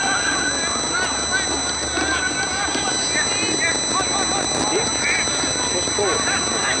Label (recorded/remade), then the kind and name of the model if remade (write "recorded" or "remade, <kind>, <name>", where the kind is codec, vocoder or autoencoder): recorded